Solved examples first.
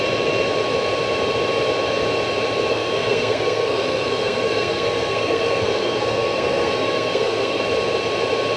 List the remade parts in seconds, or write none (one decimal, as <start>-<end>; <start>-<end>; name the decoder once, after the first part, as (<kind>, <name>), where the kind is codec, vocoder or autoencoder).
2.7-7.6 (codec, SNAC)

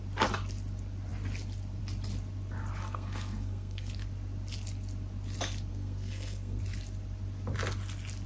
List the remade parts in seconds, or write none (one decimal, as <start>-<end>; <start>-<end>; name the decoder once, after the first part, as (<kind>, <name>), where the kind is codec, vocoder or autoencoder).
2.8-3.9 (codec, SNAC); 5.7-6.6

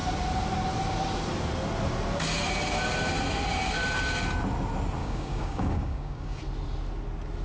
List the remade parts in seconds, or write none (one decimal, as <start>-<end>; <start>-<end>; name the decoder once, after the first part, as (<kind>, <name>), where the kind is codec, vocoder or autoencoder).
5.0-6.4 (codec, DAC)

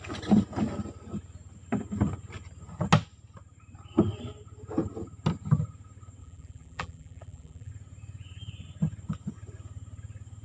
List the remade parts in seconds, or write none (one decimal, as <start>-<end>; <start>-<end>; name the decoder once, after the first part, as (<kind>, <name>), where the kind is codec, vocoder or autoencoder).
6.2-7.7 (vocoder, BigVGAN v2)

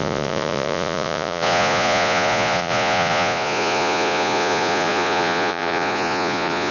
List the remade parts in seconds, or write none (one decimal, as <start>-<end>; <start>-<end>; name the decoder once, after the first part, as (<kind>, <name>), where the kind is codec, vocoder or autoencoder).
0.0-6.7 (vocoder, Vocos)

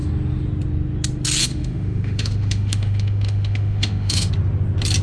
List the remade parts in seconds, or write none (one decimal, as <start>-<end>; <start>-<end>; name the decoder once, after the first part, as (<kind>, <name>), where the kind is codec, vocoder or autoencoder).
1.4-4.3 (autoencoder, DAC-VAE)